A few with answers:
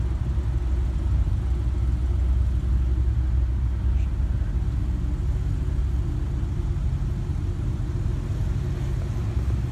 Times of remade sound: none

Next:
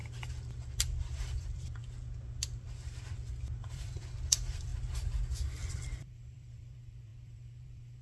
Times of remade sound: 1.0-1.8; 3.7-4.7; 5.6-8.0

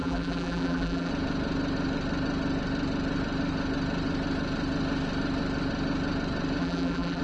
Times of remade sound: 0.0-1.1; 6.6-7.2

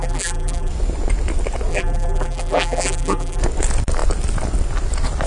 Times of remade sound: 0.0-0.7; 1.7-3.4

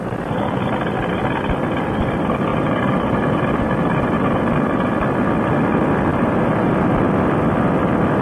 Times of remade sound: 2.5-4.9; 6.1-6.7

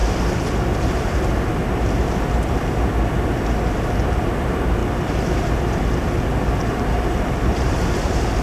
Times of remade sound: 0.8-1.6; 4.2-4.8; 6.7-8.4

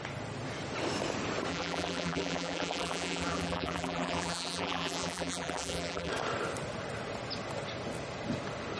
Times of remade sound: 1.5-6.1